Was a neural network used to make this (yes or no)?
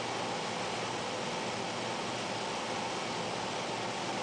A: no